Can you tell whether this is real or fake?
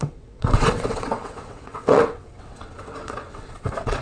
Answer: fake